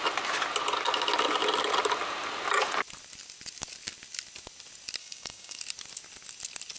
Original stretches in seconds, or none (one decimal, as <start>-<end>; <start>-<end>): 0.0-5.0; 5.6-6.8